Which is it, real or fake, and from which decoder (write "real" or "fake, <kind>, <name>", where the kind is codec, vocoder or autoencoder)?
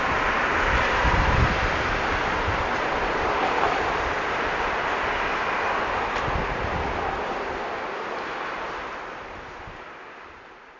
real